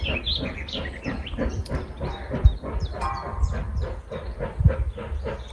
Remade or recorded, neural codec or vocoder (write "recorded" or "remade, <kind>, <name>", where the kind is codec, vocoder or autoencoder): recorded